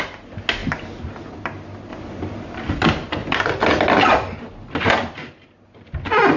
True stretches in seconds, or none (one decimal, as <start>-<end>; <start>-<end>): 0.0-6.4